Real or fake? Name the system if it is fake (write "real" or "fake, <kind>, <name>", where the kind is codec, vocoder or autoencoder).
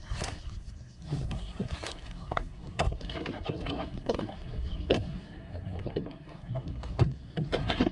fake, codec, SNAC